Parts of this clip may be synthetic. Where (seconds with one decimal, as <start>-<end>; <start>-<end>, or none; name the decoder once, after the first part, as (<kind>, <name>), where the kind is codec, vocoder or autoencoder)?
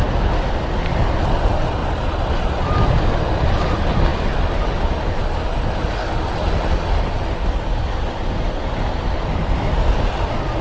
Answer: 1.8-2.7 (vocoder, BigVGAN v2)